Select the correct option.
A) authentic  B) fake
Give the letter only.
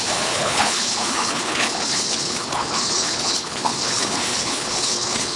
B